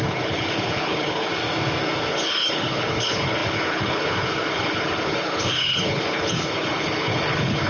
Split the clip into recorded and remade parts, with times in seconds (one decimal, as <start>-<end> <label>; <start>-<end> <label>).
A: 0.0-1.3 remade; 1.3-2.1 recorded; 2.1-7.7 remade